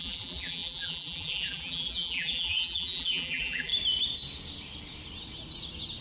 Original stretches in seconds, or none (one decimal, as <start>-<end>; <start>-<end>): 3.7-6.0